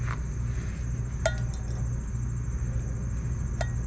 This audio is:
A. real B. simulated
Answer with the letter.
A